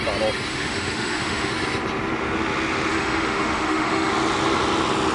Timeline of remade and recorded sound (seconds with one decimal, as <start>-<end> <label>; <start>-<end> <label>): 0.0-0.5 recorded; 0.5-1.5 remade; 1.5-2.9 recorded; 2.9-4.1 remade; 4.1-5.1 recorded

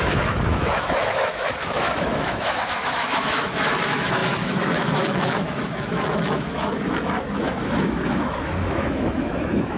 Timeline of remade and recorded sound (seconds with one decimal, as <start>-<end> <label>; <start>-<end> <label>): 0.0-9.8 remade